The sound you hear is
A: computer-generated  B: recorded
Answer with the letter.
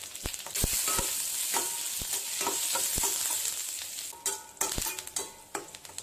B